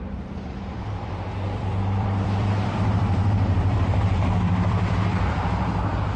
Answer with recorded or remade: remade